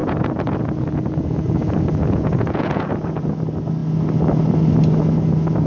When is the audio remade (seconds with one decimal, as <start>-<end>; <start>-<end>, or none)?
0.0-3.4